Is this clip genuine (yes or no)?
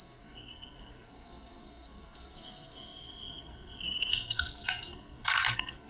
no